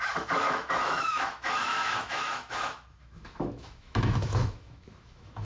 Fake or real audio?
fake